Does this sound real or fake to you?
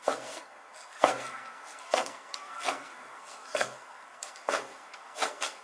fake